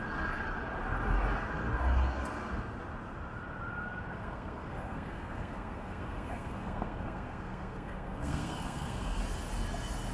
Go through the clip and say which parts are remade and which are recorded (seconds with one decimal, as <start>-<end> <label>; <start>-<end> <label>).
0.0-4.1 recorded; 4.1-9.2 remade; 9.2-10.1 recorded